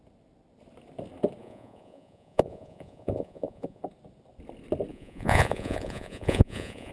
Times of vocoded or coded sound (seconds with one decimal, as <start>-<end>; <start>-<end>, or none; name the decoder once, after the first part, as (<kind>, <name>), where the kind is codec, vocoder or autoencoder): 1.4-3.8 (vocoder, Vocos); 4.9-6.9

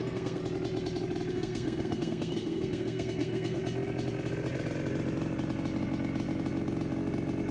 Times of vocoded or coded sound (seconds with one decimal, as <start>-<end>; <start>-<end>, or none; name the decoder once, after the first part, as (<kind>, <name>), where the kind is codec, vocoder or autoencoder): 0.0-0.4 (codec, SNAC); 1.3-3.6

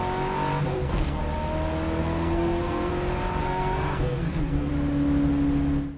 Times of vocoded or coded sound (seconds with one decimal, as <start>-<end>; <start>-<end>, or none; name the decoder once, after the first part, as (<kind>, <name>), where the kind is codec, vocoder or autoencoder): 0.7-1.2 (codec, SNAC); 2.0-2.9; 3.4-4.7

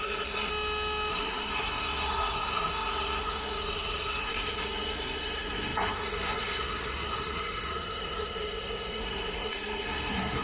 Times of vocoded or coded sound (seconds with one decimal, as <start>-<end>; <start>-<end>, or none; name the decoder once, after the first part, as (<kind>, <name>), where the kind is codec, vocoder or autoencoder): 0.0-0.5 (codec, SNAC); 1.1-10.4

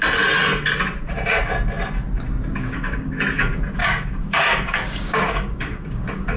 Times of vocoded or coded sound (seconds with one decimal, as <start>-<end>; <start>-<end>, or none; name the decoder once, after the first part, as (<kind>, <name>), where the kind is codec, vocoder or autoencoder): 2.5-3.1 (codec, DAC); 3.8-6.4

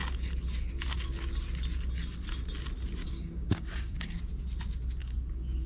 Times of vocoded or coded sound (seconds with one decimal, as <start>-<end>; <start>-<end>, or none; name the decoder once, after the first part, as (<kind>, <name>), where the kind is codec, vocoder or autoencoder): 3.0-4.3 (codec, DAC); 5.0-5.7

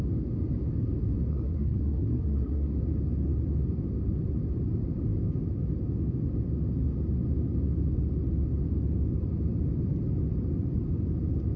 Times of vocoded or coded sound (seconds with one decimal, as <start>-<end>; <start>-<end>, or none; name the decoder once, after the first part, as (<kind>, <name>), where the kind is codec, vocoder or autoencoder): 1.3-2.7 (codec, SNAC)